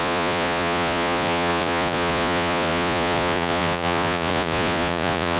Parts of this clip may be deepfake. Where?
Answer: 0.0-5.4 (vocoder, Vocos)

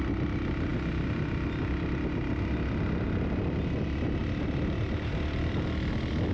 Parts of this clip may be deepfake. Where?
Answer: none